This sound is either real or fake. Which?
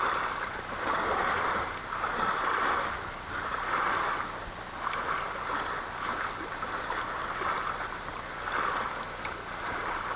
real